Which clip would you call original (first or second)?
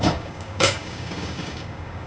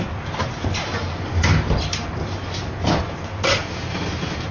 second